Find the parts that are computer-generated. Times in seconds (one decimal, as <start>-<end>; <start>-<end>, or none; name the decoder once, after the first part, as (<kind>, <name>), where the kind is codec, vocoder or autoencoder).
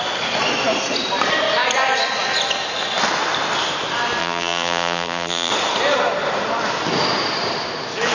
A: 4.2-5.5 (vocoder, BigVGAN v2)